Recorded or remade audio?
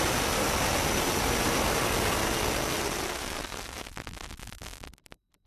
recorded